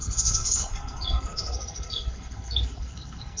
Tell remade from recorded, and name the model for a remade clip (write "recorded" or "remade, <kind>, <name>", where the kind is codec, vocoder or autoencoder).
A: remade, codec, SNAC